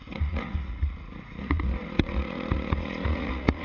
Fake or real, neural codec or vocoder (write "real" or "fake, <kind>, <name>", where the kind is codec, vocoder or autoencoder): fake, vocoder, Vocos